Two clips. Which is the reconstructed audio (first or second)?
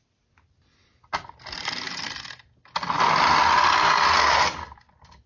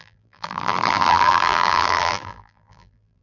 second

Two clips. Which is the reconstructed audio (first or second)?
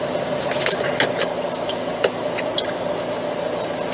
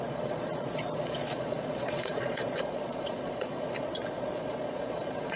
second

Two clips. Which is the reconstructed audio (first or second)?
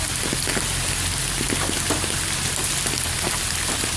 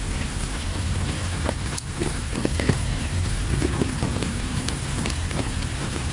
second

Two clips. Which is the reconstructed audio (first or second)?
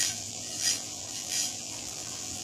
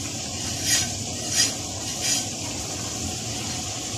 first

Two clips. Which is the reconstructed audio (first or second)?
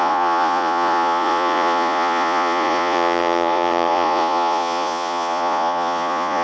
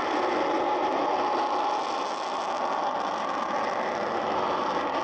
first